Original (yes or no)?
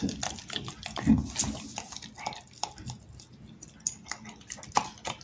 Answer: yes